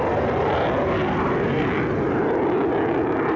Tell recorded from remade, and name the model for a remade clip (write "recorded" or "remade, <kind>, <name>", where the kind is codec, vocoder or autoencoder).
recorded